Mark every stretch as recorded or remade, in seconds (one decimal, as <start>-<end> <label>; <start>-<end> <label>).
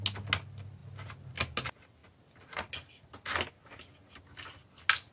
0.0-5.1 recorded